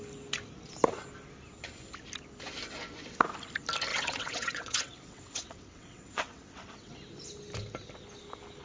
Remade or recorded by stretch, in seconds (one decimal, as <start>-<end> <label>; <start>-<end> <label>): 0.0-3.9 recorded; 3.9-6.9 remade; 6.9-8.6 recorded